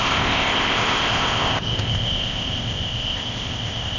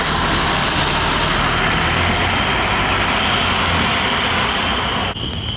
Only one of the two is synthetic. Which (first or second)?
first